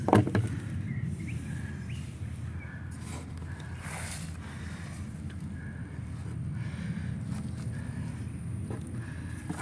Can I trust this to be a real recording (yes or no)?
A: yes